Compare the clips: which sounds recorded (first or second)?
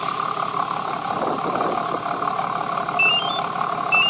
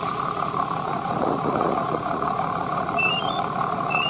first